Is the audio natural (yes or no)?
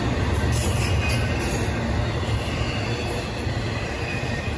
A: yes